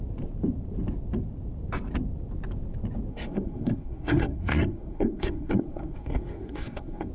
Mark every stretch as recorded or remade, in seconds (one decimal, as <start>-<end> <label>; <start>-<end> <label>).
0.0-3.1 recorded; 3.1-7.1 remade